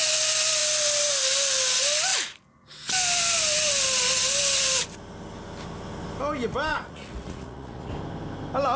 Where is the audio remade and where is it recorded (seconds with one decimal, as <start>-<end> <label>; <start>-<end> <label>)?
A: 0.0-6.7 recorded; 6.7-7.9 remade; 7.9-8.8 recorded